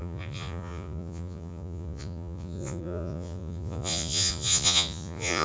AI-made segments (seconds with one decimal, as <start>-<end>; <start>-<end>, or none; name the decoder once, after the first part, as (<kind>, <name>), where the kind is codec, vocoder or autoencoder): 0.0-5.4 (vocoder, Vocos)